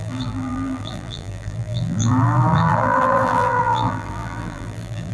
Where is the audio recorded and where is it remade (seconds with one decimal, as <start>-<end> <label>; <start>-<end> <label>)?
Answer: 0.0-5.1 remade